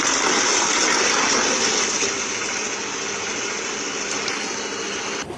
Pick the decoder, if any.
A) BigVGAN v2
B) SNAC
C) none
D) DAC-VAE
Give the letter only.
C